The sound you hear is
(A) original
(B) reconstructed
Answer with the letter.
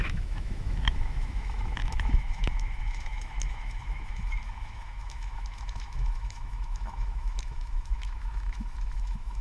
B